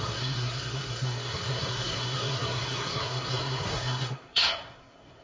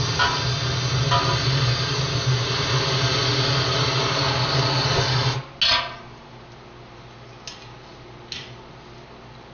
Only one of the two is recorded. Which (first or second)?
second